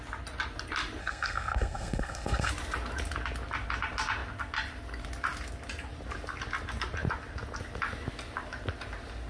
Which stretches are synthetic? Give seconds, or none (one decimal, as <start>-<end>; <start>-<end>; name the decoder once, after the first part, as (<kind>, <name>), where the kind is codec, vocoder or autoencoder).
1.0-2.5 (codec, SNAC)